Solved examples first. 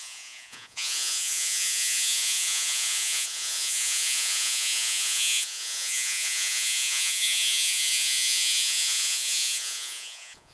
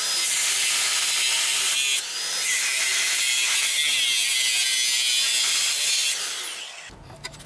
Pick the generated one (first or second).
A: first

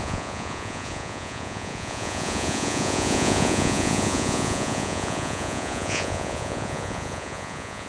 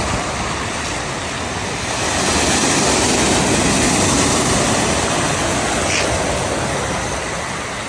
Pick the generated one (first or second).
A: first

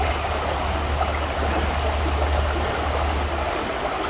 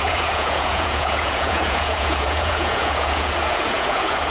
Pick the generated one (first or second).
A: second